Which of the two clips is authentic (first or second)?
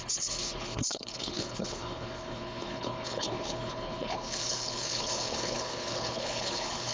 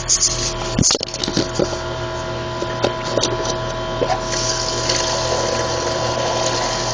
second